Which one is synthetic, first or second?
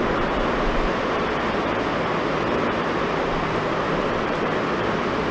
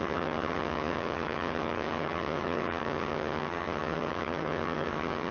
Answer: second